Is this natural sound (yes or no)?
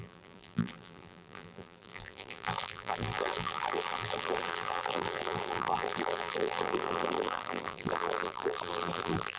no